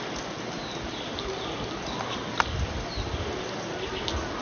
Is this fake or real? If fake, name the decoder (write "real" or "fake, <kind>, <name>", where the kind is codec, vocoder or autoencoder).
real